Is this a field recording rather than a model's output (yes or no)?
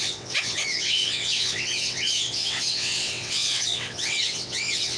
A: no